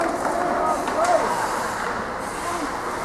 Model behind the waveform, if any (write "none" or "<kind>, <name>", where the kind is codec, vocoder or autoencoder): none